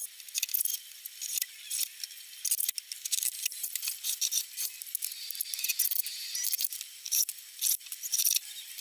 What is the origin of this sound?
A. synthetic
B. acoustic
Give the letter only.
B